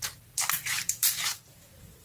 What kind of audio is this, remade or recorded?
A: remade